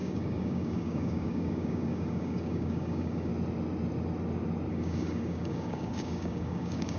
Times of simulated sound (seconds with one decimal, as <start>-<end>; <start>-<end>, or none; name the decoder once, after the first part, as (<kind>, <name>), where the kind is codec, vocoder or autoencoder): 0.0-3.3 (codec, DAC); 4.7-7.0